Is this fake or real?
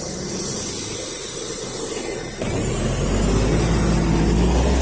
real